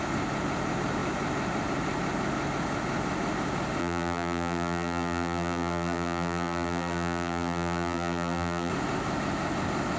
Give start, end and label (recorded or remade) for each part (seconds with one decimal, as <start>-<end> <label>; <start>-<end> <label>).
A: 0.0-3.8 recorded; 3.8-8.7 remade; 8.7-10.0 recorded